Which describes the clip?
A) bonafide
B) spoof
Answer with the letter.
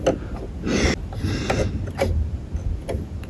A